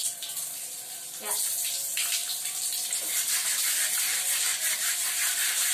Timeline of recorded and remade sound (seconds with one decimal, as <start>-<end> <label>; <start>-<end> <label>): 0.0-5.7 recorded